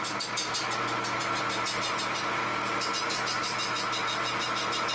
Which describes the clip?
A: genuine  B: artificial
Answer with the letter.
A